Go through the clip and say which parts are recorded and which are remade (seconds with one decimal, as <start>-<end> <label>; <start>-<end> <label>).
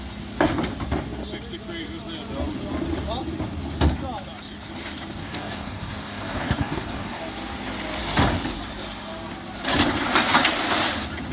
0.0-5.2 recorded; 5.2-7.2 remade; 7.2-11.3 recorded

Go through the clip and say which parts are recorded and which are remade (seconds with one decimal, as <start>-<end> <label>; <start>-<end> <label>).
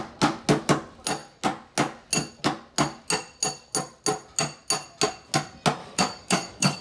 0.0-5.8 recorded; 5.8-6.8 remade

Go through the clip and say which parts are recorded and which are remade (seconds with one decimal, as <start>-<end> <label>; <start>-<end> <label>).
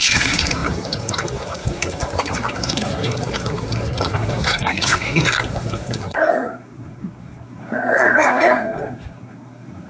0.0-9.9 remade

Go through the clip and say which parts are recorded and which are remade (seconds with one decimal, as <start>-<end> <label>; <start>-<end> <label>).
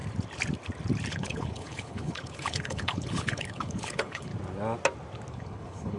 0.0-1.1 recorded; 1.1-4.3 remade; 4.3-5.3 recorded; 5.3-6.0 remade